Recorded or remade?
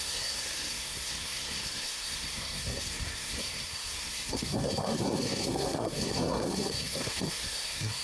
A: remade